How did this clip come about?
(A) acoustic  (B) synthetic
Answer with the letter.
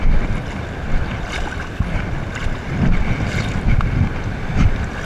A